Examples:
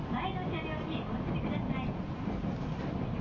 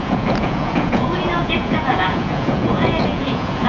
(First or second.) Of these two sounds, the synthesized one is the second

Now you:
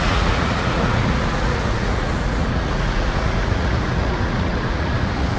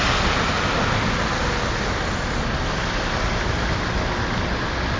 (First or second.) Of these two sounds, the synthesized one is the first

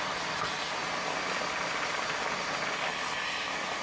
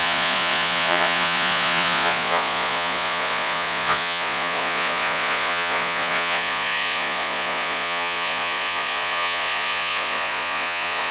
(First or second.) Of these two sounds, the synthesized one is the second